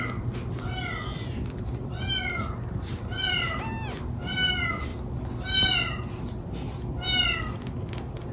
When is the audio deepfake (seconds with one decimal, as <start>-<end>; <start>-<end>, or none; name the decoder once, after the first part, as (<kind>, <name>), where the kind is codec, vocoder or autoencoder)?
none